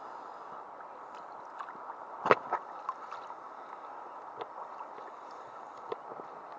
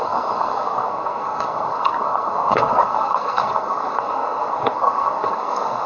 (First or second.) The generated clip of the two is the second